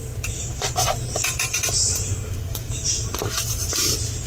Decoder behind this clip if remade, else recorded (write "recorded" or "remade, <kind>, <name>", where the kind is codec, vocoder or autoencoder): remade, vocoder, BigVGAN v2